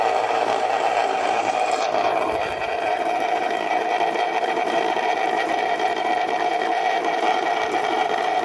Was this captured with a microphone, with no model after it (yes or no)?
no